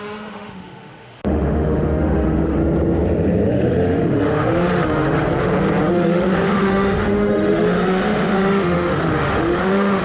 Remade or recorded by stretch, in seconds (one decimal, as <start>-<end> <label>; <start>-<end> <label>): 0.0-2.6 remade; 2.6-3.5 recorded; 3.5-5.3 remade; 5.3-5.9 recorded; 5.9-10.0 remade